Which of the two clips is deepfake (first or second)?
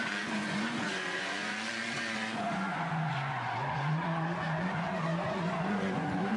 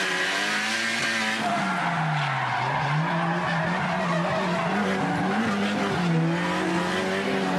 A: first